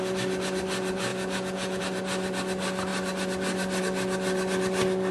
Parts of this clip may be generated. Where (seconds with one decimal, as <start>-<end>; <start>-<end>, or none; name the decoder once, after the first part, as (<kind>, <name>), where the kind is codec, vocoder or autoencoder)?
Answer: 1.1-1.8 (vocoder, Vocos)